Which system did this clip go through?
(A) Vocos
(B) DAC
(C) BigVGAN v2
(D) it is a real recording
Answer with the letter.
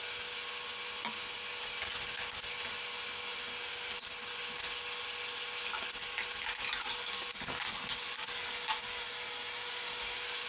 D